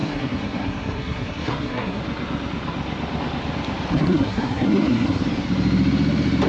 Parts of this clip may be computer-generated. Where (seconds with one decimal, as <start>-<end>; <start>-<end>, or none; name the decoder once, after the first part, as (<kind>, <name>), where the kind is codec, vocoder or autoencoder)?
0.0-2.0 (codec, SNAC); 3.9-5.2